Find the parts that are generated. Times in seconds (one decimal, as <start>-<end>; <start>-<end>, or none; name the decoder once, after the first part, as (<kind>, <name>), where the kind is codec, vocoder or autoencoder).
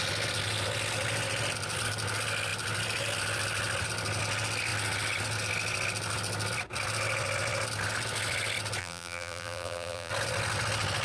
8.8-10.1 (vocoder, BigVGAN v2)